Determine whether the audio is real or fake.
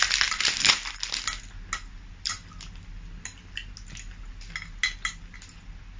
real